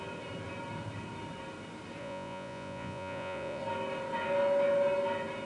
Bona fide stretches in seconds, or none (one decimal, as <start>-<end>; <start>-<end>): 0.0-2.0; 3.6-5.5